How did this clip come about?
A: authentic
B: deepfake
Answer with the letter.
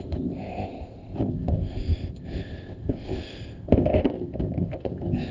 B